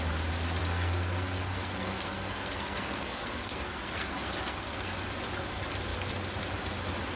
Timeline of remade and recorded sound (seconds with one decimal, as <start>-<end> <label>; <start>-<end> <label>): 0.0-0.6 recorded; 0.6-4.9 remade; 4.9-7.2 recorded